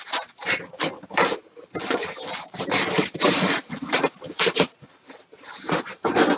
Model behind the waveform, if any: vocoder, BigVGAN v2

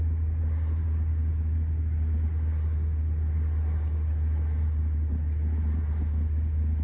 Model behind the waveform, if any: none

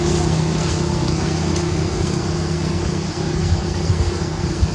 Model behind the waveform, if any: codec, SNAC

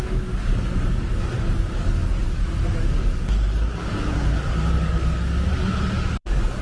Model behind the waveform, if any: codec, DAC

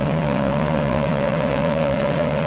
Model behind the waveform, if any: vocoder, WaveNeXt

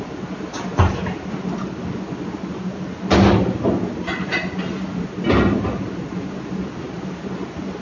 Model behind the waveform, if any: none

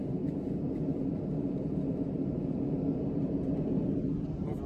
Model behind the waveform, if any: none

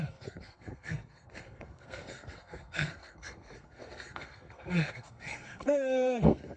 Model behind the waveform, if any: codec, SNAC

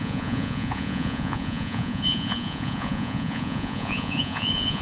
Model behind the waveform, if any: vocoder, Vocos